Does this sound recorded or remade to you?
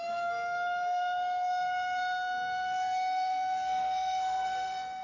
remade